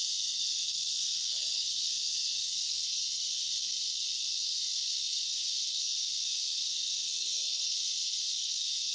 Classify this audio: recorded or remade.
remade